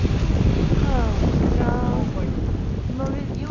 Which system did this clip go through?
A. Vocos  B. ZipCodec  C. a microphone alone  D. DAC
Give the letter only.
C